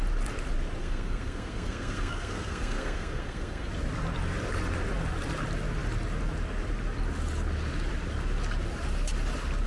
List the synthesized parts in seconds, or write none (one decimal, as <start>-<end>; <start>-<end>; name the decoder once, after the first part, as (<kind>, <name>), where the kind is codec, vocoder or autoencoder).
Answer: 0.8-3.7 (codec, SNAC)